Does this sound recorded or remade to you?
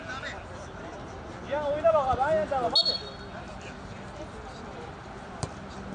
recorded